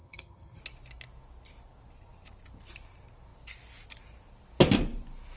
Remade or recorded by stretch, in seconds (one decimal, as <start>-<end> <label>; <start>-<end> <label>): 0.0-0.6 remade; 0.6-5.4 recorded